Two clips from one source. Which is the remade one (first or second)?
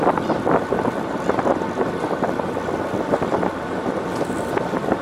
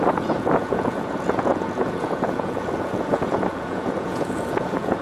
second